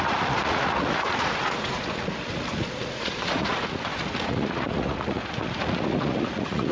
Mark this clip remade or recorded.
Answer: remade